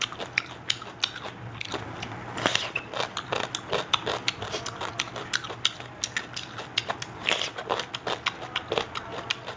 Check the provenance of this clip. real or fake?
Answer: real